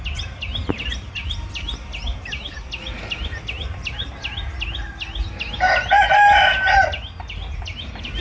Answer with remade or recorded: recorded